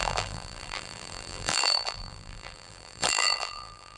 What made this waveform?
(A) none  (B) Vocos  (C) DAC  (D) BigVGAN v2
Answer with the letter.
D